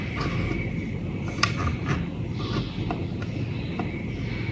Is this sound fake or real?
real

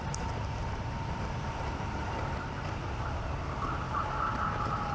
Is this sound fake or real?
fake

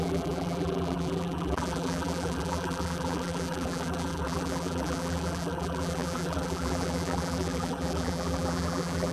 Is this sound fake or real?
fake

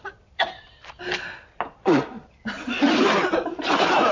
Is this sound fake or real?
fake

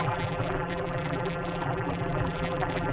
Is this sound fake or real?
fake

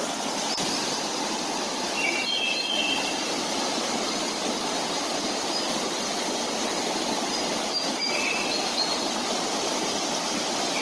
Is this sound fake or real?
real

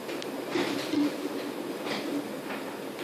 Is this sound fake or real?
real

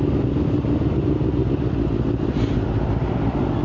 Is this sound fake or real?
real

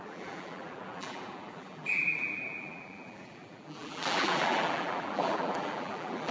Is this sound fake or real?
fake